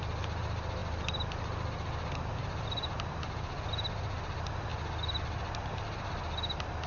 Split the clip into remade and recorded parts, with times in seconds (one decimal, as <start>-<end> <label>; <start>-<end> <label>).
0.0-6.9 recorded